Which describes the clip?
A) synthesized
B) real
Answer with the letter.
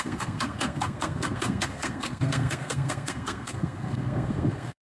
A